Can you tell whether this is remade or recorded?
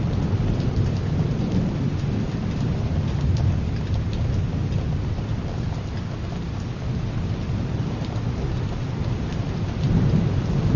recorded